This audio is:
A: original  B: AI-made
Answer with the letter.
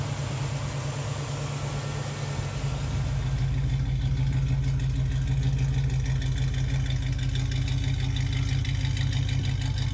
A